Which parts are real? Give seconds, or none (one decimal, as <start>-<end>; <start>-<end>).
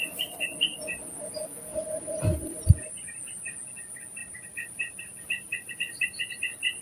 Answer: 0.0-1.7; 3.2-4.2; 6.2-6.8